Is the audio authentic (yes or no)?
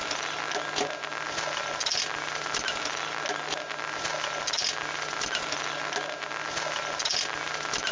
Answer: yes